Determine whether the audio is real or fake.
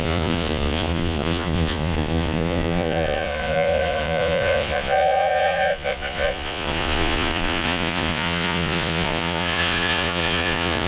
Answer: fake